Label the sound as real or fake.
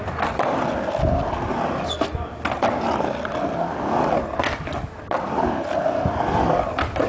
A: real